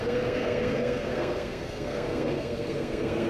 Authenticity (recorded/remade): remade